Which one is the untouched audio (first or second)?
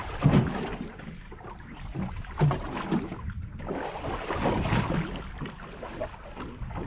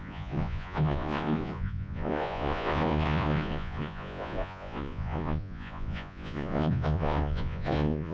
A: first